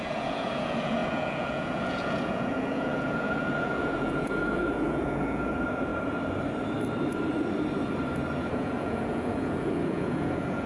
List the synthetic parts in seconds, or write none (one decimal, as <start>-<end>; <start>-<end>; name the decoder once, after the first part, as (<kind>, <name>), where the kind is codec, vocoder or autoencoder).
0.0-5.9 (vocoder, Vocos); 8.5-10.7